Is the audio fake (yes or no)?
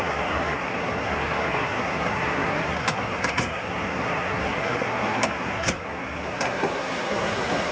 yes